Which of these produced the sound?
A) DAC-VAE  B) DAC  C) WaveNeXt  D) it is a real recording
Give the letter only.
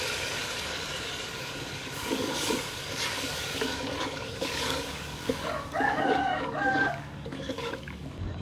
B